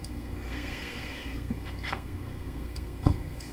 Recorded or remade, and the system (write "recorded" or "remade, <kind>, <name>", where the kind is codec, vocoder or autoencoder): remade, codec, SNAC